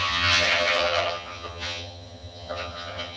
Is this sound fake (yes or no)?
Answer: yes